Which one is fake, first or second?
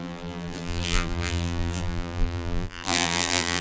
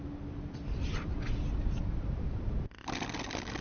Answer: first